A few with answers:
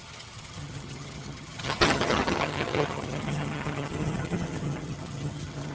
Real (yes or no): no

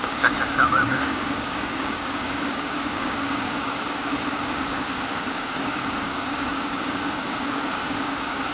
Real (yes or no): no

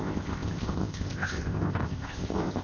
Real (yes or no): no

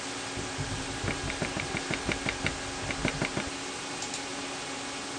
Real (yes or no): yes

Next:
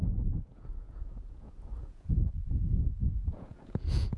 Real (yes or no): no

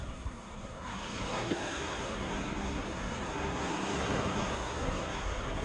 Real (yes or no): no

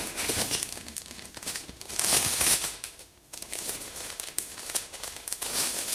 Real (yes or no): no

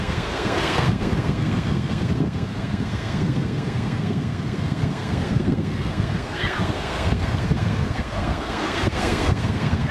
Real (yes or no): no